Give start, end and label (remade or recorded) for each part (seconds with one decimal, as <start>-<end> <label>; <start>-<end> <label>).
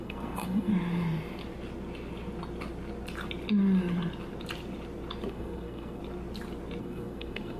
0.0-0.7 remade; 0.7-5.3 recorded; 5.3-6.0 remade; 6.0-6.8 recorded; 6.8-7.6 remade